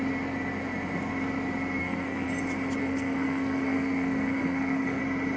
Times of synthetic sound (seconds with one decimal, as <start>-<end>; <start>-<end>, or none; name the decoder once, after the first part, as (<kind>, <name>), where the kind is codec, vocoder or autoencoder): 1.8-2.3 (codec, SNAC); 2.8-5.0